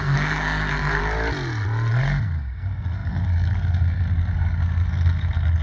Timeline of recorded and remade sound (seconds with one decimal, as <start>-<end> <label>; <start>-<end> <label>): 0.0-1.0 remade; 1.0-1.9 recorded; 1.9-5.6 remade